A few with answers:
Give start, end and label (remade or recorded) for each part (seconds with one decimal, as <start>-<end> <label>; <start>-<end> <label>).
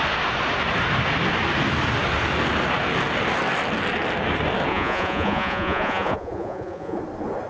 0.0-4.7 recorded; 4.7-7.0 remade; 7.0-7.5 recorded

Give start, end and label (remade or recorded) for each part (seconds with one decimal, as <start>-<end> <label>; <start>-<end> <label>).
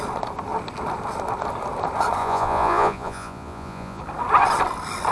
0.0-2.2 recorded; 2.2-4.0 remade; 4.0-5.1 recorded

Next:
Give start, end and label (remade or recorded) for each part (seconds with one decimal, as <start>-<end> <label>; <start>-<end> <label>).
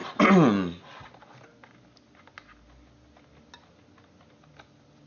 0.0-5.1 recorded